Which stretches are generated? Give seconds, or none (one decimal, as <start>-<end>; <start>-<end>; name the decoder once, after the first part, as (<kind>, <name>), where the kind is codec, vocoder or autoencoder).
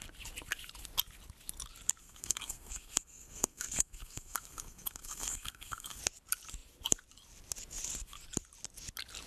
2.0-6.0 (codec, SNAC)